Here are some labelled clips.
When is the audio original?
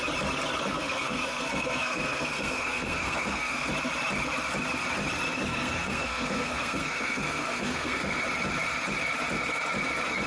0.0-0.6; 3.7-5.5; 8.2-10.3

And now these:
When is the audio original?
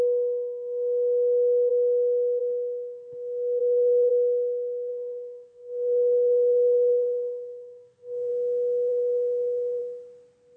0.0-3.6; 4.1-4.9; 8.3-8.9; 9.8-10.6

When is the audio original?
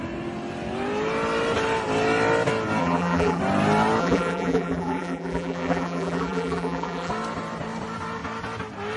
0.0-2.8; 3.4-4.0; 7.1-9.0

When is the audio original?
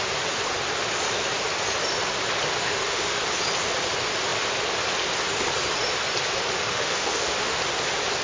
0.0-2.6; 3.2-6.6; 7.6-8.2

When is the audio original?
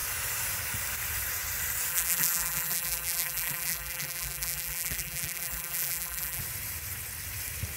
0.0-1.9; 6.4-7.8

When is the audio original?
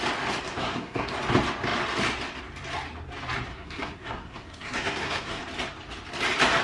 0.0-0.6; 1.1-3.5; 5.4-6.6